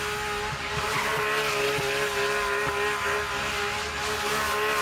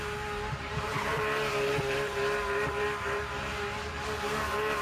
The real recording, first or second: first